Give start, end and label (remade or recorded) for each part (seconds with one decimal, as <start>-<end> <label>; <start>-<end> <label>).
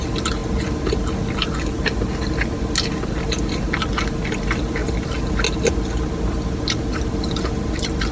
0.0-8.1 recorded